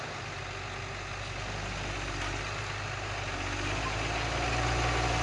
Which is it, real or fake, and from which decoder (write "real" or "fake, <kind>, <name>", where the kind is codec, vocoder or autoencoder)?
real